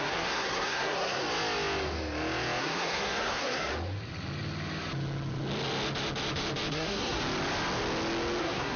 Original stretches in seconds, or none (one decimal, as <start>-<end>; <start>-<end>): 1.2-2.6; 3.7-6.7; 7.2-8.4